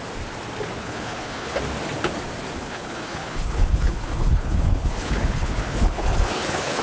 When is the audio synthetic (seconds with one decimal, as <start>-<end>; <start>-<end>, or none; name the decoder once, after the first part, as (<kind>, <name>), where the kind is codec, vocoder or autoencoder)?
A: 0.8-1.6 (codec, HILCodec); 2.6-6.8